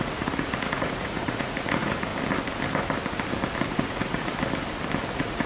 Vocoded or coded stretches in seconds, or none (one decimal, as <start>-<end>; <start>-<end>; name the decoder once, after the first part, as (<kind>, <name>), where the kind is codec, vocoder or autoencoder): 0.0-2.1 (vocoder, Vocos); 3.7-4.3; 5.1-5.5